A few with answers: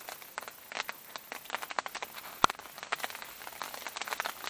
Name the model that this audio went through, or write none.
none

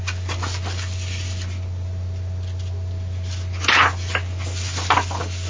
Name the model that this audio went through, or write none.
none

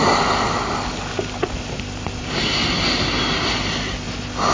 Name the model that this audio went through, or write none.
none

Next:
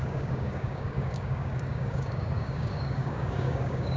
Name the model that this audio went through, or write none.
codec, DAC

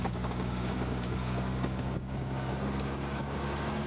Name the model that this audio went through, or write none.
codec, DAC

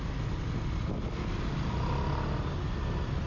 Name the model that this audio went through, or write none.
none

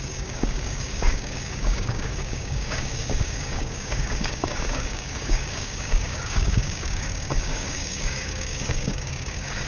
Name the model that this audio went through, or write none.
codec, DAC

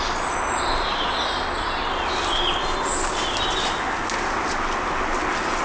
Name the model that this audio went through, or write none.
none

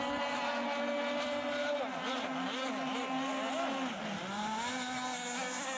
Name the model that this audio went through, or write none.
none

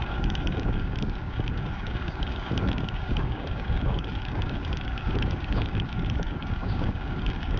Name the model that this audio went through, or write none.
codec, DAC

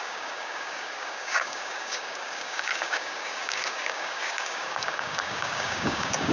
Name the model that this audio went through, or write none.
codec, DAC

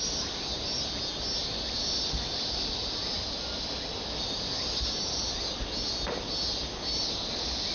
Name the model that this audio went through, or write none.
none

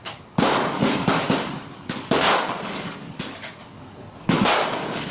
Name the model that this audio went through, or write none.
codec, DAC